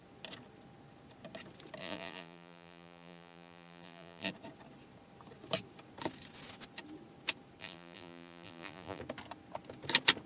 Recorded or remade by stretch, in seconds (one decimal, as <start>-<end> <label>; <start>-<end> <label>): 0.0-1.8 recorded; 1.8-4.3 remade; 4.3-7.6 recorded; 7.6-9.0 remade; 9.0-10.3 recorded